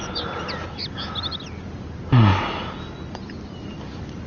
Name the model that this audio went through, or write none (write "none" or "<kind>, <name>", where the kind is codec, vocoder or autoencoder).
none